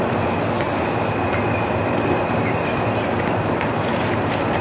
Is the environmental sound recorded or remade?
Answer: remade